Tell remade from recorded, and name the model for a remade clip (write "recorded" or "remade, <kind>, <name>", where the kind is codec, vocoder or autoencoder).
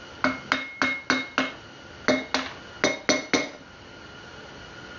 recorded